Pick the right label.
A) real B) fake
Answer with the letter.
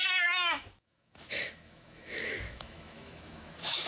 B